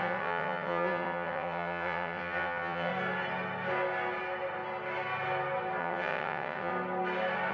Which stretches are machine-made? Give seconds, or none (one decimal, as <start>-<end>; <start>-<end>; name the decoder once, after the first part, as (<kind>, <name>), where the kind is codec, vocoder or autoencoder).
0.0-2.9 (vocoder, WaveNeXt); 5.8-6.7